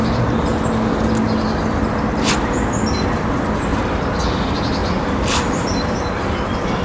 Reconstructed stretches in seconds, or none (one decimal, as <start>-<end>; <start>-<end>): 0.0-0.5; 3.1-3.7; 4.3-6.8

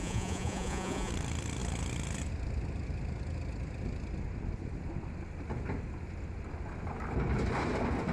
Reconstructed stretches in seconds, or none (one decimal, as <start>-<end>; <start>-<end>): 0.0-1.1